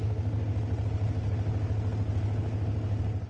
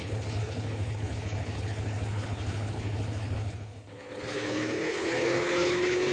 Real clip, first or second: first